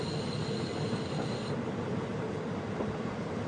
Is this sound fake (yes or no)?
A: no